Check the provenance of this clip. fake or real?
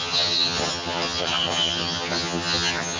fake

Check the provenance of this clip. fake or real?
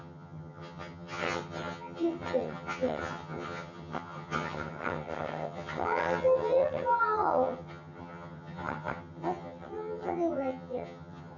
fake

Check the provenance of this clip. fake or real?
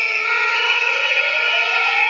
fake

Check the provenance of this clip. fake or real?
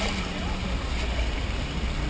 real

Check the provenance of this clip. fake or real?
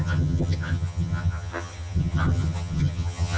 fake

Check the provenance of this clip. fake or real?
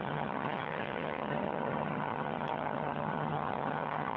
fake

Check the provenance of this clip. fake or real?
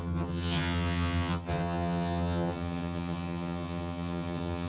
fake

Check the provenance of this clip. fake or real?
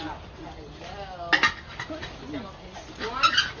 real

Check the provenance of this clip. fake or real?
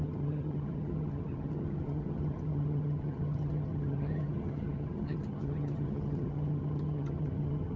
fake